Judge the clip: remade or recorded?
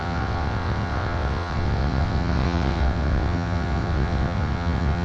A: remade